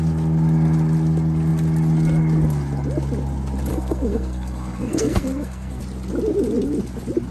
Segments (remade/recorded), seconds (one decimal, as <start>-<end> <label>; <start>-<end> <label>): 0.0-3.7 recorded; 3.7-5.8 remade; 5.8-7.3 recorded

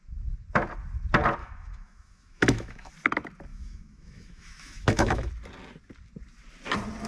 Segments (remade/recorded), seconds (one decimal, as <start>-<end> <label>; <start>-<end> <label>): 0.0-1.4 recorded; 1.4-2.9 remade; 2.9-3.5 recorded; 3.5-5.3 remade; 5.3-7.1 recorded